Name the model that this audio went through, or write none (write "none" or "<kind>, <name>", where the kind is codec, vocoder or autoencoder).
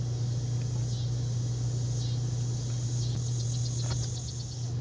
none